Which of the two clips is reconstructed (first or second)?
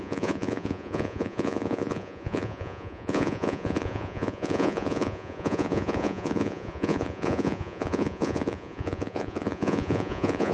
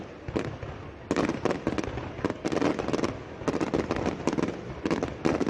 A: first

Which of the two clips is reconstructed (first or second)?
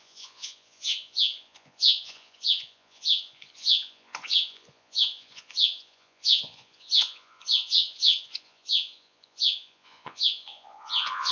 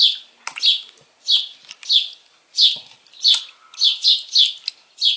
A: first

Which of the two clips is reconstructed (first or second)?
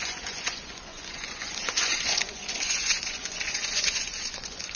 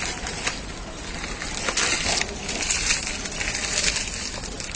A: first